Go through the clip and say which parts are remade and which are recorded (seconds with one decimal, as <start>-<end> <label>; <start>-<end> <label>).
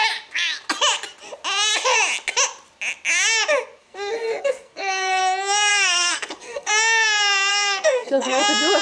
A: 0.0-3.8 recorded; 3.8-5.2 remade; 5.2-5.7 recorded; 5.7-6.7 remade; 6.7-7.5 recorded; 7.5-8.4 remade; 8.4-8.8 recorded